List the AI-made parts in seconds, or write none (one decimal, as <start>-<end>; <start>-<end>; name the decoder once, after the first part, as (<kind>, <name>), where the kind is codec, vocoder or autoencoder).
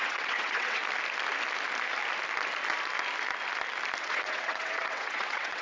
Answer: 0.0-0.8 (vocoder, WaveNeXt); 4.0-5.6